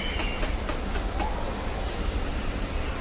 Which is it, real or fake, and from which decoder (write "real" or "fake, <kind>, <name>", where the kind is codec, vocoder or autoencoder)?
real